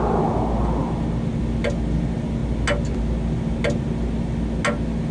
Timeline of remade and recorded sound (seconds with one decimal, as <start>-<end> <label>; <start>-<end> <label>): 0.0-5.1 recorded